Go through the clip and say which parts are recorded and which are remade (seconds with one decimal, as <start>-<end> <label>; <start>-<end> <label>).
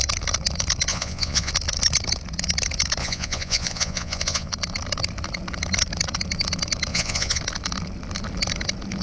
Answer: 0.0-0.9 recorded; 0.9-1.5 remade; 1.5-3.0 recorded; 3.0-4.5 remade; 4.5-6.9 recorded; 6.9-7.4 remade; 7.4-9.0 recorded